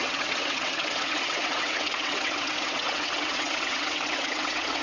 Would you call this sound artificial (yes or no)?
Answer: yes